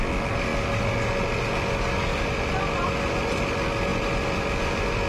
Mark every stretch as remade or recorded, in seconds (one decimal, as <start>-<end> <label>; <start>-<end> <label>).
0.0-2.1 recorded; 2.1-2.9 remade; 2.9-3.9 recorded; 3.9-5.1 remade